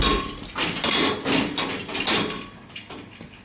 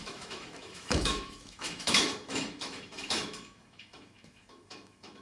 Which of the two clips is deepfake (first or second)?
second